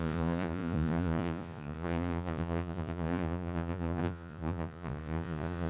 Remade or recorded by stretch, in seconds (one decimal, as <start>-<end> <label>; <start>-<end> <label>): 0.0-5.7 remade